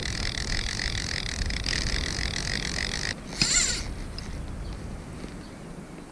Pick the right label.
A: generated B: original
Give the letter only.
B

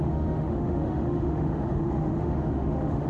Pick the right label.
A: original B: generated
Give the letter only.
B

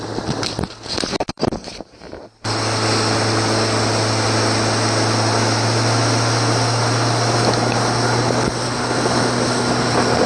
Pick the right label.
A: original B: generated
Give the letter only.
A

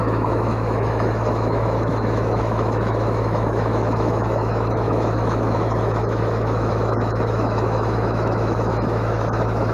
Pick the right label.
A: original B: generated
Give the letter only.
B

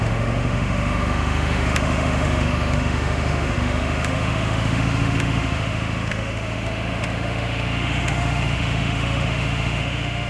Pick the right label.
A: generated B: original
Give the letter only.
A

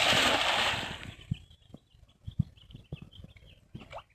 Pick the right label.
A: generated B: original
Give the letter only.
B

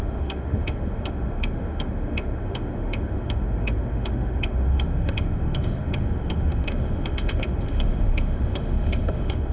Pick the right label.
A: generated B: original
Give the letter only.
A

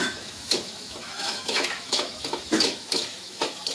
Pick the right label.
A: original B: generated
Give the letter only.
B